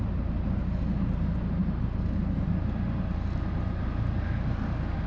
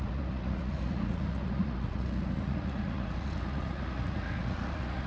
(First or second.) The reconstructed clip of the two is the second